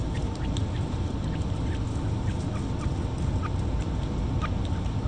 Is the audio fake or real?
real